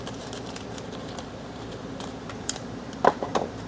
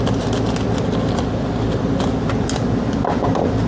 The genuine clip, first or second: second